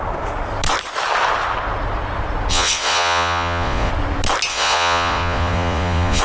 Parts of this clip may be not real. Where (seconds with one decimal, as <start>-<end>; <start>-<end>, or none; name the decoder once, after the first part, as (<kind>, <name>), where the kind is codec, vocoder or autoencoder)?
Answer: 2.5-3.9 (vocoder, Vocos); 4.5-6.2